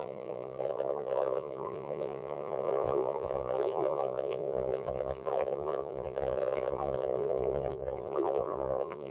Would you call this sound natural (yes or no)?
no